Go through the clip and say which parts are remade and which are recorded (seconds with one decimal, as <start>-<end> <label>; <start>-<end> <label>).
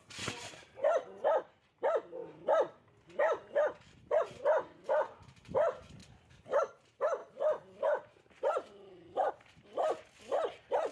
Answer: 0.0-2.2 remade; 2.2-4.2 recorded; 4.2-6.0 remade; 6.0-6.6 recorded; 6.6-7.2 remade; 7.2-9.3 recorded; 9.3-10.9 remade